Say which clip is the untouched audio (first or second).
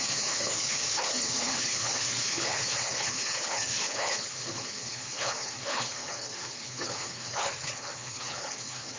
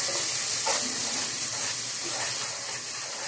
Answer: second